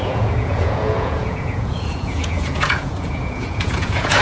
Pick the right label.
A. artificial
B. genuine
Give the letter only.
A